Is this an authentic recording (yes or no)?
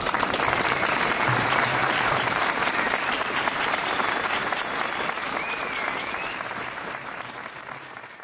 no